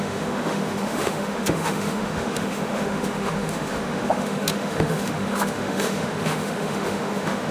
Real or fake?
fake